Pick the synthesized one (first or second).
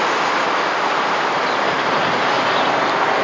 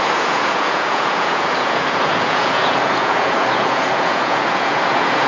second